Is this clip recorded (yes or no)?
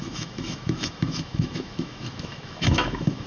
no